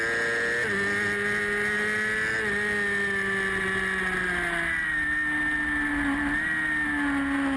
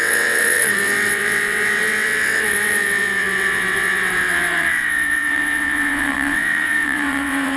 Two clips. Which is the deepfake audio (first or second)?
second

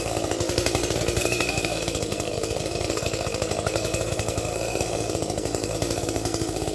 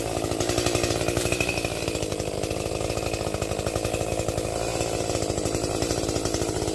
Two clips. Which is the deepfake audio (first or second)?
first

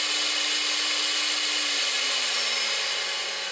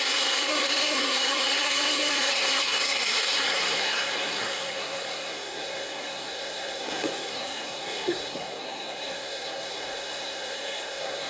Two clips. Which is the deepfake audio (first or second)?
second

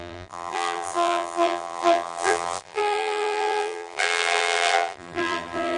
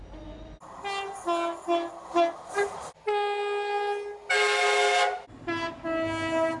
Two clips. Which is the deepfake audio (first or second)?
first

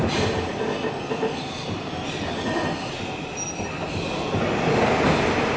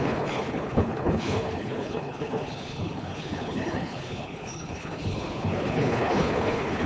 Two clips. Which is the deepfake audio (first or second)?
second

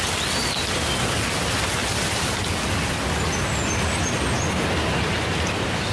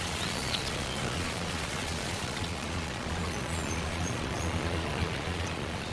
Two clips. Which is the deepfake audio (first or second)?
second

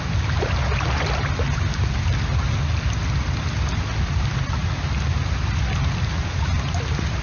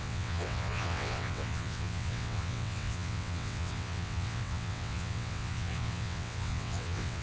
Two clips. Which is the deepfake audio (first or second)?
second